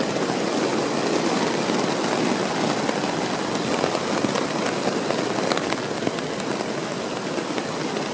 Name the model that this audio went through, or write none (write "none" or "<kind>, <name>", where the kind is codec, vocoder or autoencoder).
none